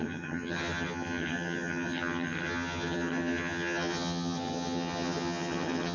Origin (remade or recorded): remade